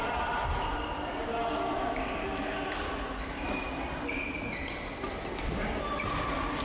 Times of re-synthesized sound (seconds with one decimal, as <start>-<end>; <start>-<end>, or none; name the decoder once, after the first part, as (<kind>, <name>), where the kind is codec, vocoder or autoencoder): none